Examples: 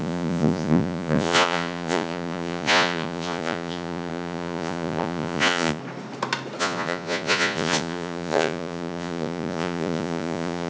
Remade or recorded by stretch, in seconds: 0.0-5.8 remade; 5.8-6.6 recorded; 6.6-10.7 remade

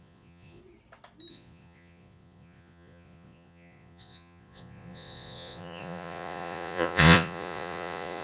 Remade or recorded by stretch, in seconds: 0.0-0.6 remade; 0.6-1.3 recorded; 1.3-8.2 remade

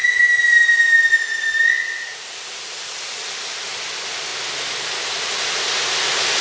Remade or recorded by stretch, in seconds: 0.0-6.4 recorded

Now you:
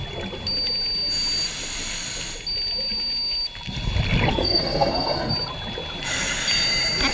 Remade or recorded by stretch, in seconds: 0.0-4.3 recorded; 4.3-5.3 remade; 5.3-7.1 recorded